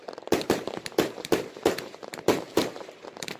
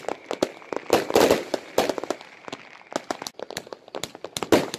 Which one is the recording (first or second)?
second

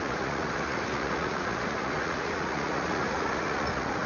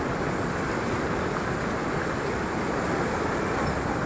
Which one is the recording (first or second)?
second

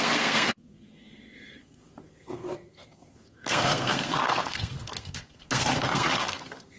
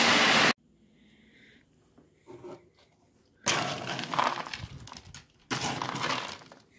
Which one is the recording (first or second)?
second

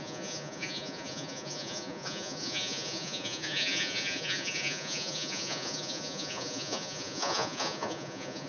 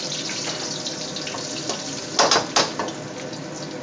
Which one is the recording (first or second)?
second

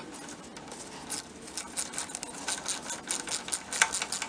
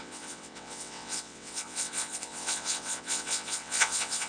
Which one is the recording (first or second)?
first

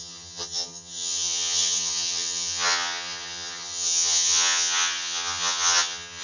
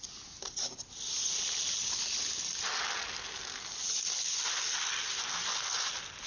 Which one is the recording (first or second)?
second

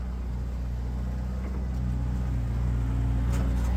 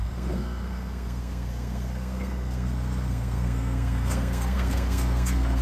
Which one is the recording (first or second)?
first